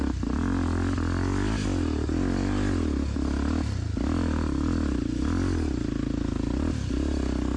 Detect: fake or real real